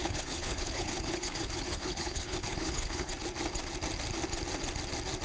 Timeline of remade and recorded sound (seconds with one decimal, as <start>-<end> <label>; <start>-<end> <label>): 0.0-3.1 remade; 3.1-5.2 recorded